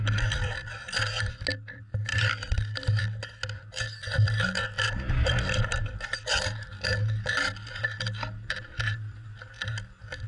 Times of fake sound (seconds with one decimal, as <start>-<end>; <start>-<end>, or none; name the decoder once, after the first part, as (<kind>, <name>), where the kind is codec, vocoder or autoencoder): none